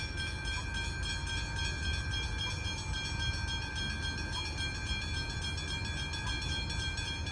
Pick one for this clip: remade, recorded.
recorded